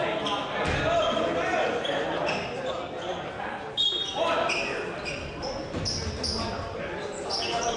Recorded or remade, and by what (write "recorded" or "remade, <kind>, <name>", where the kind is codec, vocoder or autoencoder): recorded